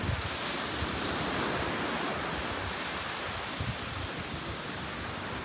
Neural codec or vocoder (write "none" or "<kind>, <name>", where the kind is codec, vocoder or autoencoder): none